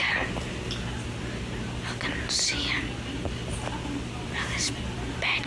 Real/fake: real